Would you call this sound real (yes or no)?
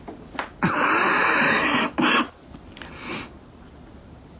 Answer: yes